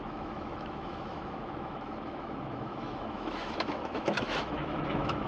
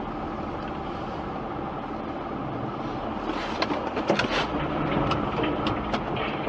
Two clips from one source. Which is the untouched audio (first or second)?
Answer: second